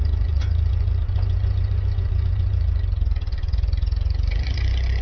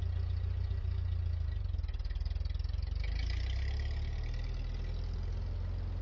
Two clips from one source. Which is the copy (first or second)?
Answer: first